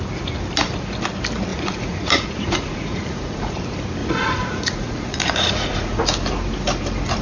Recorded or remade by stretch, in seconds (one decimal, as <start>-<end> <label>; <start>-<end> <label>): 0.0-1.5 recorded; 1.5-3.6 remade; 3.6-4.0 recorded; 4.0-6.0 remade; 6.0-7.2 recorded